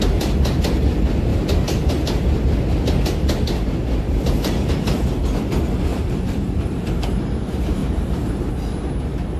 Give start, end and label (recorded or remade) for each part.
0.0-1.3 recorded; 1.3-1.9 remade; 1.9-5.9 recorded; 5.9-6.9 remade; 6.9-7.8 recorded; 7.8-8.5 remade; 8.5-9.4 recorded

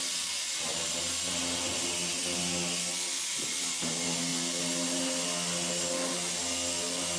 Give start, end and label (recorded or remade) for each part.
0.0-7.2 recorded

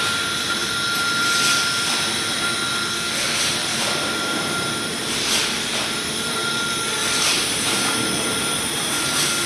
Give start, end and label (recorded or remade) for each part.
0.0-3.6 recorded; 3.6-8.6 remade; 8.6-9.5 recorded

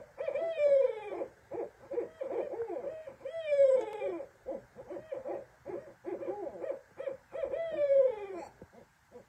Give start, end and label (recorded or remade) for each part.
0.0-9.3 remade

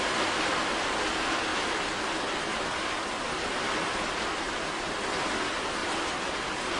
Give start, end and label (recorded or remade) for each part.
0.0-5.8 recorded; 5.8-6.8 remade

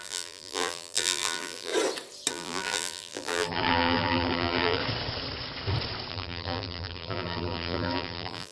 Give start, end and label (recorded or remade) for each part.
0.0-1.7 remade; 1.7-2.3 recorded; 2.3-4.8 remade; 4.8-6.1 recorded; 6.1-8.5 remade

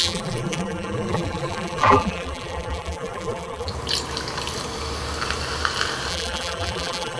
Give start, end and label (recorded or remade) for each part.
0.0-3.7 remade; 3.7-6.1 recorded; 6.1-7.2 remade